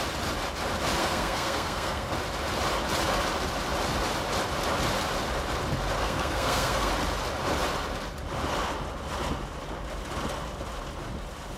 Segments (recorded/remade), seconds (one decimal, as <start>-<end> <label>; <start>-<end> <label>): 0.0-1.0 recorded; 1.0-2.1 remade; 2.1-6.0 recorded; 6.0-6.9 remade; 6.9-11.6 recorded